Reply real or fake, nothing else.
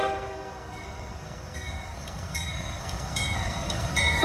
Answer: fake